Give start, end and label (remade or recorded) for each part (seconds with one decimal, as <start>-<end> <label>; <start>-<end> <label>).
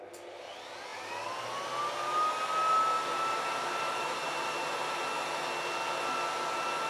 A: 0.0-3.1 recorded; 3.1-5.0 remade; 5.0-6.9 recorded